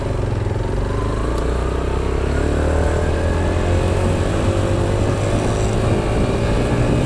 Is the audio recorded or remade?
recorded